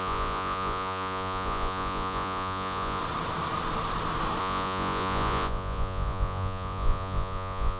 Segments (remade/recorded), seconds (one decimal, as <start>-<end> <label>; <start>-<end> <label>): 0.0-3.0 remade; 3.0-4.4 recorded; 4.4-7.8 remade